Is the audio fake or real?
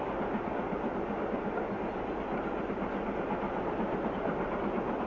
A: real